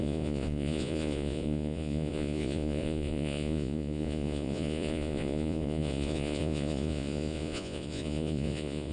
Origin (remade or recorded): remade